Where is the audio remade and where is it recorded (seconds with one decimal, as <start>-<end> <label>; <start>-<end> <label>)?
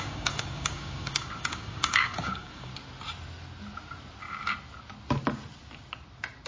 0.0-2.7 remade; 2.7-6.5 recorded